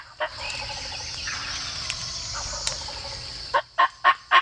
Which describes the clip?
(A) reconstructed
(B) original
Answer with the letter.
B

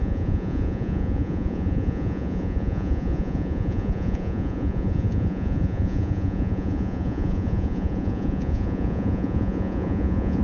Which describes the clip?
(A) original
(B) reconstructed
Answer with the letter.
B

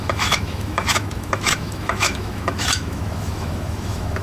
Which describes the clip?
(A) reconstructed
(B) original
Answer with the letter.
A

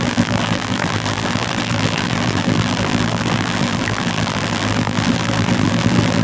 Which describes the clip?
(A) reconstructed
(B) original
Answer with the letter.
A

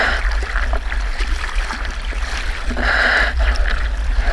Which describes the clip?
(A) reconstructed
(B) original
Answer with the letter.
B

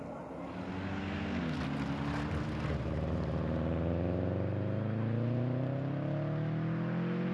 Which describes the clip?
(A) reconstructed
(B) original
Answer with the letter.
B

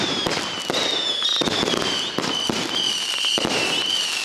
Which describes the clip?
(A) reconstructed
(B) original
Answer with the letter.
B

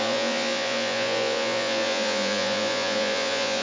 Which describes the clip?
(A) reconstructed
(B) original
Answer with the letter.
A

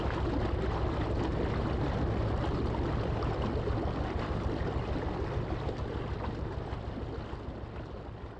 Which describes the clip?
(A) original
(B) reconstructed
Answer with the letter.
A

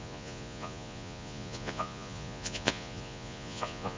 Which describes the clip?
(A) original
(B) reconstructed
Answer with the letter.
B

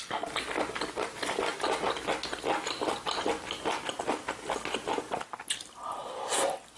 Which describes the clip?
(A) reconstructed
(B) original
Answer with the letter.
B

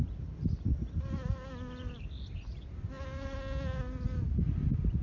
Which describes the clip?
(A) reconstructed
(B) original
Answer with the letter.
B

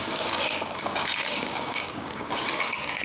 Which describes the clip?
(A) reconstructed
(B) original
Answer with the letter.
A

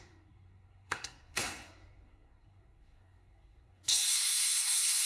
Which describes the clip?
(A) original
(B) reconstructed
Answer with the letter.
B